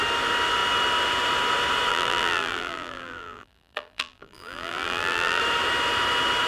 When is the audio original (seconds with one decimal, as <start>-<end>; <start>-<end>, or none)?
0.0-1.9; 5.4-6.5